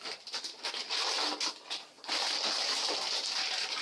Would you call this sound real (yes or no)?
yes